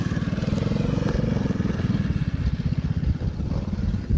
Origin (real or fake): real